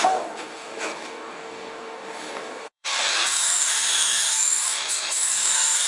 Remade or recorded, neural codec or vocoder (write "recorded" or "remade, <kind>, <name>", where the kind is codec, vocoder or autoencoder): remade, codec, DAC